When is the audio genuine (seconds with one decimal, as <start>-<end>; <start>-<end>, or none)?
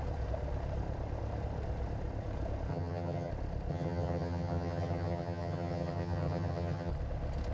0.0-2.7; 3.3-3.7; 6.9-7.5